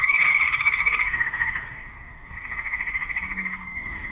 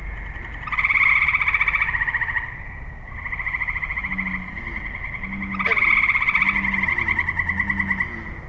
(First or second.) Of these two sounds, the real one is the second